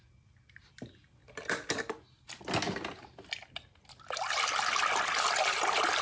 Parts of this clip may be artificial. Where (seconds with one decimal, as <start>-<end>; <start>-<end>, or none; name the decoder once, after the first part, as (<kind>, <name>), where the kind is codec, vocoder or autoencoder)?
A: none